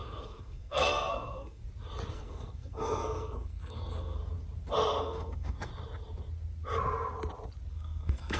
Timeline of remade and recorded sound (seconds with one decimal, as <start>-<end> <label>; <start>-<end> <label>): 0.0-1.6 remade; 1.6-2.1 recorded; 2.1-4.2 remade; 4.2-5.0 recorded; 5.0-5.7 remade; 5.7-7.7 recorded; 7.7-8.4 remade